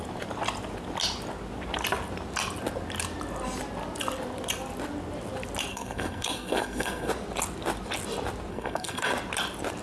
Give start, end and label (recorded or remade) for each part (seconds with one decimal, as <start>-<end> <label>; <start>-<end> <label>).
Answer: 0.0-5.7 recorded; 5.7-7.1 remade; 7.1-8.5 recorded; 8.5-9.1 remade; 9.1-9.8 recorded